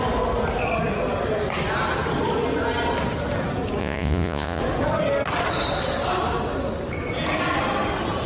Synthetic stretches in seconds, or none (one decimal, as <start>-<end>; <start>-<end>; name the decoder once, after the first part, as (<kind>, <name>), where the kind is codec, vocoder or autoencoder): 3.8-4.6 (vocoder, Vocos)